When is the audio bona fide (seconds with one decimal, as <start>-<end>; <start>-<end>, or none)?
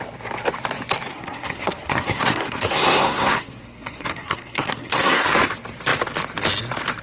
0.0-1.1; 5.3-7.0